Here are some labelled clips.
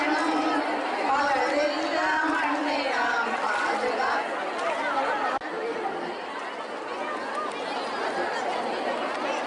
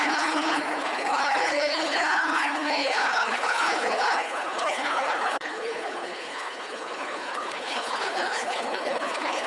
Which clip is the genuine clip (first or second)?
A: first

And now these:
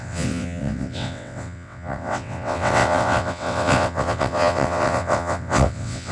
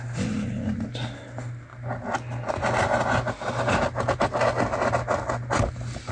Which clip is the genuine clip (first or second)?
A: second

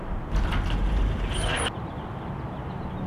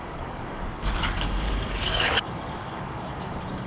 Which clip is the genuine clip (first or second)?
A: first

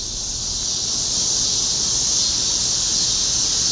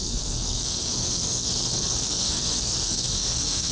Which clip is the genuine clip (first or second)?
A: first